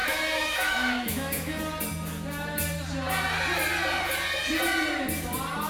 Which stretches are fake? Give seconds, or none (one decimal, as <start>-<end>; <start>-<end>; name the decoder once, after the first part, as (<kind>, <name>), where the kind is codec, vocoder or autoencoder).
0.0-1.6 (autoencoder, DAC-VAE)